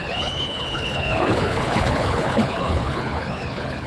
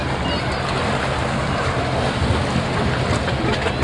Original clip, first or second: second